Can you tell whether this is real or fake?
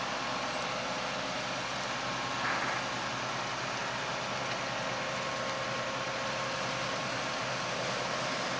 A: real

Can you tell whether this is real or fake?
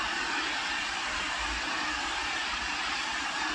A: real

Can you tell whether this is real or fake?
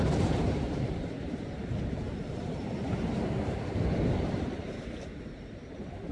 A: fake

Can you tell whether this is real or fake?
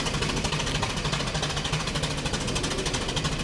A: real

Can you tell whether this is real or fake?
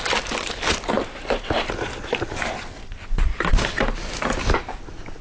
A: real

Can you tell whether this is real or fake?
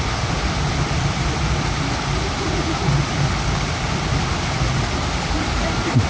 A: fake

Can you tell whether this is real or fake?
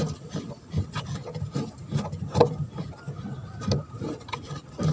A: fake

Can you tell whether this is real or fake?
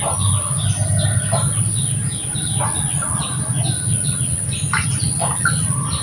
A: real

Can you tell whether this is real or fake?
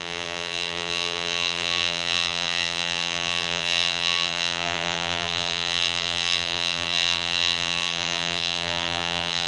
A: fake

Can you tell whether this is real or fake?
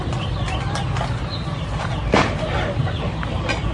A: real